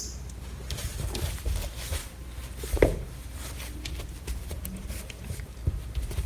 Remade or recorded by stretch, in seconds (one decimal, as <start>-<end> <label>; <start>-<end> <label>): 0.0-6.3 recorded